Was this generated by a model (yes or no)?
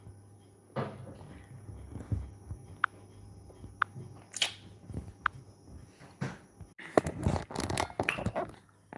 no